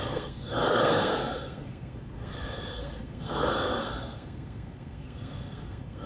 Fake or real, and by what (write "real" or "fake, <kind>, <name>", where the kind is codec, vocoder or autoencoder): fake, codec, SNAC